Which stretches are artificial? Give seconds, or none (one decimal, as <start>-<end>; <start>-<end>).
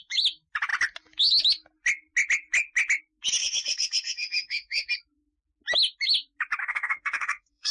3.4-4.9; 6.6-7.7